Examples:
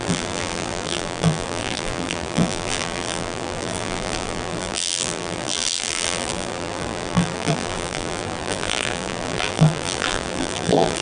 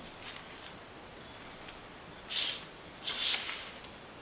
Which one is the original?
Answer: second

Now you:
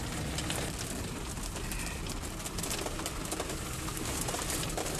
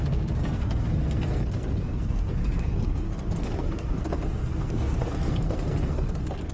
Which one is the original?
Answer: first